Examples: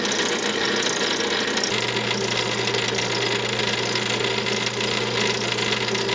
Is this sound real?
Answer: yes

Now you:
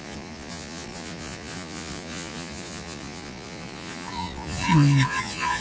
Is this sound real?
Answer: no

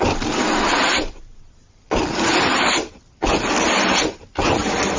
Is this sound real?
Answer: yes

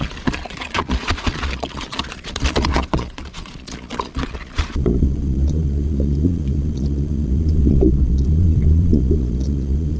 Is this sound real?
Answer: no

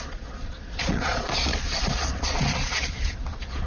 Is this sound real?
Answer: no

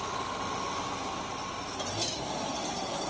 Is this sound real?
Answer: yes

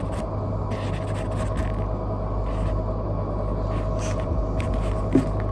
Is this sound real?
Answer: yes